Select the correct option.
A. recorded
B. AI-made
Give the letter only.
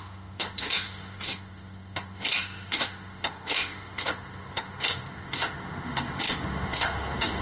B